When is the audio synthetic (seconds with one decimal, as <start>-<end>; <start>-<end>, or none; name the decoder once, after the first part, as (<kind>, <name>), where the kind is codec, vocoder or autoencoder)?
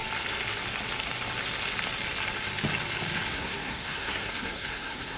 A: 3.3-5.2 (codec, SNAC)